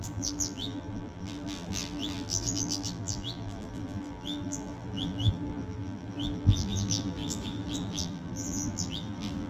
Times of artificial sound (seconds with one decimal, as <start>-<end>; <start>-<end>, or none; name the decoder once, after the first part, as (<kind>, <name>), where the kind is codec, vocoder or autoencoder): 0.0-9.5 (vocoder, BigVGAN v2)